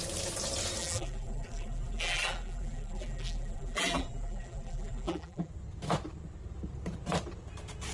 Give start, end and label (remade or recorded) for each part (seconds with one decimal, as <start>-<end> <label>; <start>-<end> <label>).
0.0-0.8 recorded; 0.8-5.5 remade; 5.5-7.9 recorded